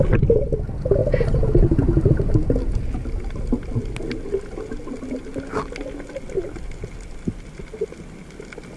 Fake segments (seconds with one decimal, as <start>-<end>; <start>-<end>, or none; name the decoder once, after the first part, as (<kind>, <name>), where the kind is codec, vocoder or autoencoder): none